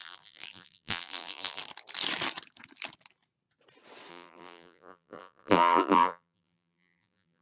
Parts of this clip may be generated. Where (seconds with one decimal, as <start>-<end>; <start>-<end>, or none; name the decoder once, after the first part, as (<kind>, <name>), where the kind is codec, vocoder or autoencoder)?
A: 0.0-1.6 (vocoder, BigVGAN v2); 4.1-7.4